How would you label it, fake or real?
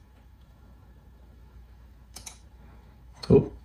fake